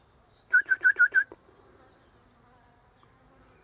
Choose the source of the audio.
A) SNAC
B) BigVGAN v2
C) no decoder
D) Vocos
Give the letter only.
C